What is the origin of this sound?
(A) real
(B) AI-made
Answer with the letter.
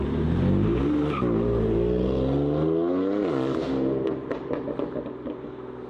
A